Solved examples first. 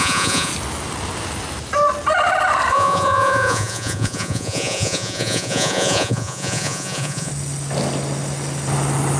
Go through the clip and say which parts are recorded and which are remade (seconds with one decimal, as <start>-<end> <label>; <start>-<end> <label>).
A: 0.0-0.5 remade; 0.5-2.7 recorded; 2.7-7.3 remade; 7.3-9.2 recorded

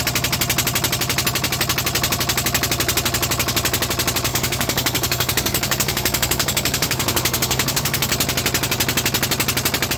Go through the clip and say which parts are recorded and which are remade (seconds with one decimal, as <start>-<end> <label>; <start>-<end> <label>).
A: 0.0-4.3 recorded; 4.3-8.1 remade; 8.1-10.0 recorded

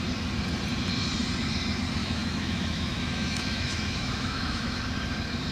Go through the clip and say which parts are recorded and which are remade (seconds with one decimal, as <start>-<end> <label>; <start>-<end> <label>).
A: 0.0-2.0 recorded; 2.0-4.8 remade; 4.8-5.5 recorded

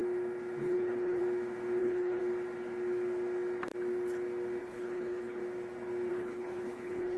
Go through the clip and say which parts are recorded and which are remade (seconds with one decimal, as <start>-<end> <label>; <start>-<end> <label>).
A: 0.0-0.6 recorded; 0.6-1.2 remade; 1.2-1.8 recorded; 1.8-2.2 remade; 2.2-4.6 recorded; 4.6-5.4 remade; 5.4-6.1 recorded; 6.1-7.2 remade

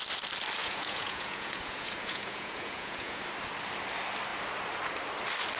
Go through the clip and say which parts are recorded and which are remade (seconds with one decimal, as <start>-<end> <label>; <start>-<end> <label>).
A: 0.0-0.6 recorded; 0.6-3.2 remade; 3.2-5.6 recorded

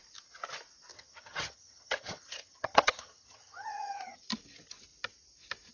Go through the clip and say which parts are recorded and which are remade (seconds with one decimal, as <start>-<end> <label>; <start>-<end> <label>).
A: 0.0-0.9 recorded; 0.9-4.2 remade; 4.2-5.7 recorded